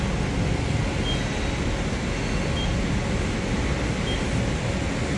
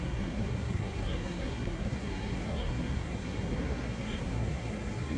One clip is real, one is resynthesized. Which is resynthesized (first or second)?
second